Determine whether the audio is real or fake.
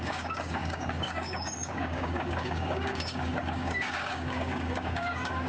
fake